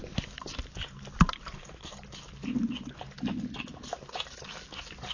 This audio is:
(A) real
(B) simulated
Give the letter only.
A